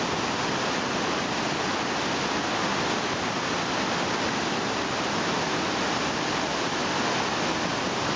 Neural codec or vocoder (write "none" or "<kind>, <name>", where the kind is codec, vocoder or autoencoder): none